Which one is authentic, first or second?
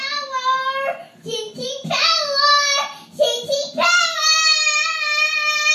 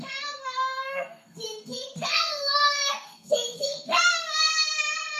first